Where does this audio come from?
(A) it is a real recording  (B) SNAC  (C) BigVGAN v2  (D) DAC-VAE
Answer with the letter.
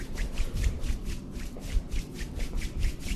C